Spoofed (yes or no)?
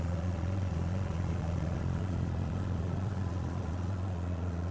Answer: yes